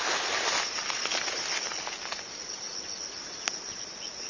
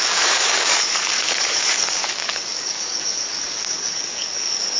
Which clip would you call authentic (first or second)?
first